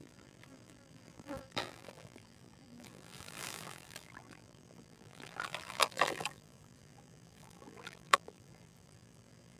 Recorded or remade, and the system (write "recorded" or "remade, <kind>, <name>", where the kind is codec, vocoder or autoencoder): remade, vocoder, BigVGAN v2